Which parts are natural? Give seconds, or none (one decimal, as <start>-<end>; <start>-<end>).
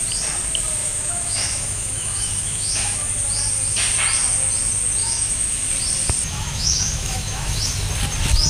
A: 0.0-0.8; 3.0-5.0; 5.7-6.3; 7.6-8.5